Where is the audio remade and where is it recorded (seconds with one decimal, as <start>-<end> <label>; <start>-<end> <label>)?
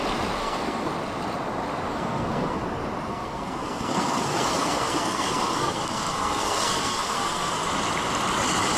0.0-0.4 recorded; 0.4-0.9 remade; 0.9-1.9 recorded; 1.9-2.6 remade; 2.6-3.1 recorded; 3.1-7.7 remade; 7.7-8.8 recorded